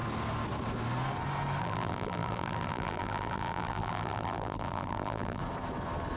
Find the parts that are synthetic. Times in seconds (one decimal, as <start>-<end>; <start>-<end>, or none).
1.6-5.4